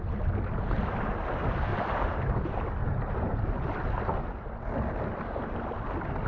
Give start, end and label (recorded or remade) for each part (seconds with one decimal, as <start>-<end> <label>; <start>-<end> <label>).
0.0-1.7 recorded; 1.7-2.3 remade; 2.3-6.3 recorded